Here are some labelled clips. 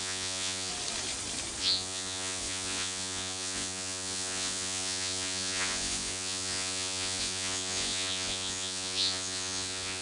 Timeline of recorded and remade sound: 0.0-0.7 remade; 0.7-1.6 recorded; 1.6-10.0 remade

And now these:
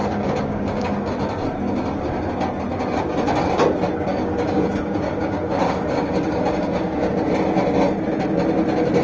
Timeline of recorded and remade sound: 0.0-1.1 remade; 1.1-4.1 recorded; 4.1-7.1 remade; 7.1-9.0 recorded

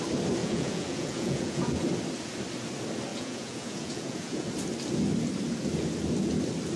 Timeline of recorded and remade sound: 0.0-0.4 recorded; 0.4-1.8 remade; 1.8-3.1 recorded; 3.1-4.5 remade; 4.5-6.8 recorded

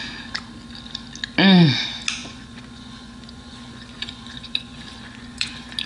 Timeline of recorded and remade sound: 0.0-2.2 recorded; 2.2-5.9 remade

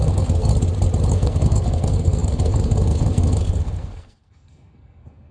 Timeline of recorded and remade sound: 0.0-0.5 remade; 0.5-1.1 recorded; 1.1-5.3 remade

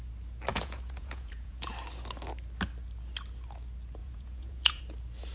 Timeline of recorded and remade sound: 0.0-0.5 recorded; 0.5-1.7 remade; 1.7-4.0 recorded; 4.0-4.8 remade; 4.8-5.3 recorded